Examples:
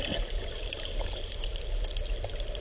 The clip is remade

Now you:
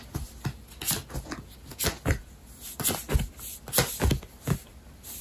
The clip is recorded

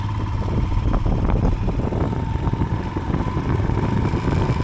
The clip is recorded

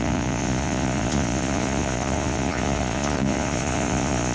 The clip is remade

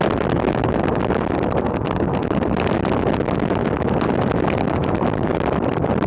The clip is remade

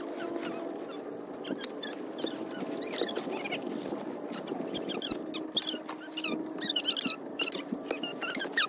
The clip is recorded